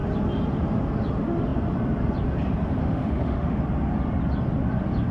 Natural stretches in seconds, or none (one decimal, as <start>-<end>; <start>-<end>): 0.0-2.8; 3.6-5.1